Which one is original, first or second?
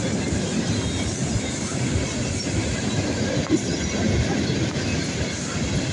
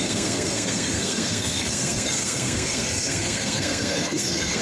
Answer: first